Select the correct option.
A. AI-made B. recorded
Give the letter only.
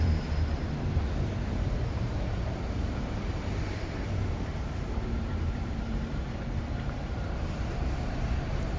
A